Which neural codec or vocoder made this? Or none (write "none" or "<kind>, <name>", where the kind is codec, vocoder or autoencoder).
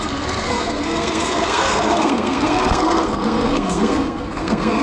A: codec, SNAC